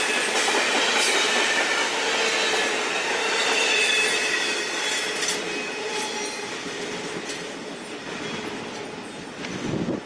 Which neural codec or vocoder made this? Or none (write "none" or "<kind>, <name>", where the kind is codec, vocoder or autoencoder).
none